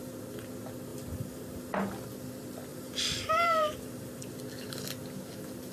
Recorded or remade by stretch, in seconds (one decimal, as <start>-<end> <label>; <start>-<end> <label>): 0.0-0.9 recorded; 0.9-1.6 remade; 1.6-2.7 recorded; 2.7-4.2 remade; 4.2-5.7 recorded